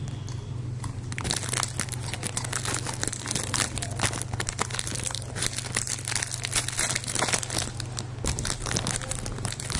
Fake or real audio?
real